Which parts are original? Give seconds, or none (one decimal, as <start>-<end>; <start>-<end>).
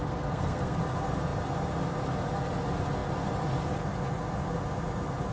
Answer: 0.8-5.3